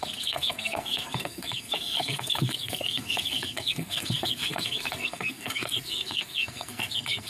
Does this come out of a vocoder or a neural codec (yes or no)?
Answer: yes